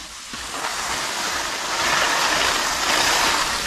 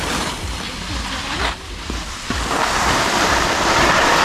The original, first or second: first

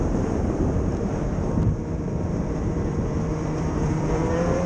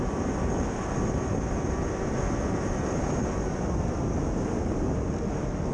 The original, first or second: second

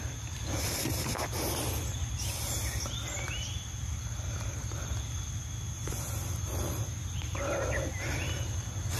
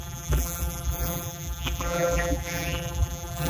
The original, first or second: first